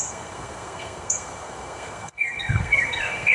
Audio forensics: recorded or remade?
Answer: remade